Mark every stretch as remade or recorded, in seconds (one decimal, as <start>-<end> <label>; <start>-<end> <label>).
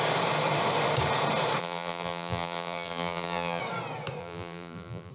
0.0-1.6 recorded; 1.6-3.6 remade; 3.6-4.2 recorded; 4.2-5.1 remade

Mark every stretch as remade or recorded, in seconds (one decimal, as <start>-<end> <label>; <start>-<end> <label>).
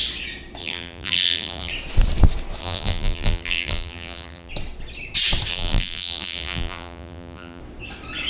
0.0-0.6 recorded; 0.6-1.7 remade; 1.7-2.6 recorded; 2.6-4.5 remade; 4.5-5.5 recorded; 5.5-7.6 remade; 7.6-8.3 recorded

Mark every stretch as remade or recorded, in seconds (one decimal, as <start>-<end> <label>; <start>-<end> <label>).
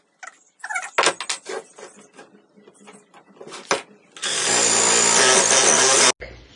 0.0-6.6 recorded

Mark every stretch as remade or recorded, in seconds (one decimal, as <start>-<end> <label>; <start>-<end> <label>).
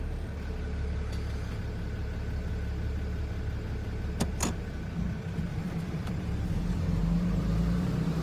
0.0-5.5 recorded; 5.5-7.0 remade; 7.0-8.2 recorded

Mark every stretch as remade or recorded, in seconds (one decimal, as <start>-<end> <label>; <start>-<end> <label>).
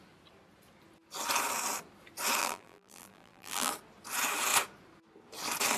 0.0-2.4 recorded; 2.4-3.7 remade; 3.7-5.8 recorded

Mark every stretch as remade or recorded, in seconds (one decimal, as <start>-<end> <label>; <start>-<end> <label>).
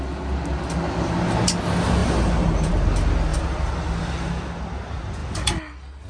0.0-2.0 recorded; 2.0-2.7 remade; 2.7-3.3 recorded; 3.3-4.3 remade; 4.3-6.1 recorded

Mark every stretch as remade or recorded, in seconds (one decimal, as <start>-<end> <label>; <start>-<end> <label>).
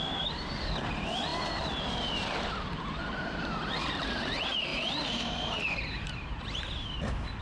0.0-4.7 recorded; 4.7-7.4 remade